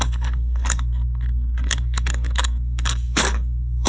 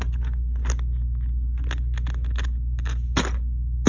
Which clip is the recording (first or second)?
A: second